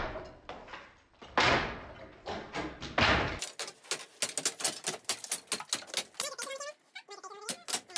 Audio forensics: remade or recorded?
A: recorded